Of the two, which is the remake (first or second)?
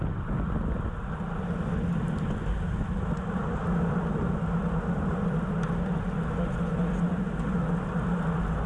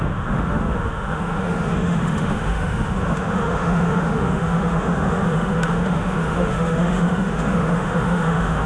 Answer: second